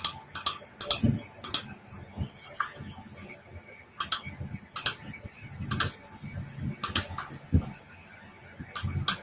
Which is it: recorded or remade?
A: recorded